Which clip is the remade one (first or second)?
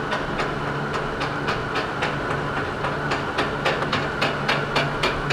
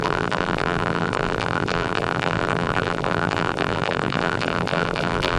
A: second